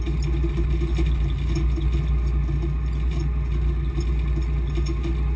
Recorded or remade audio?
recorded